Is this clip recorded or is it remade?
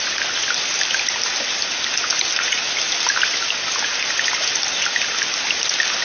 recorded